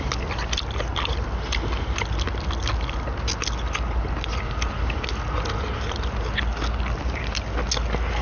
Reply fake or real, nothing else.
real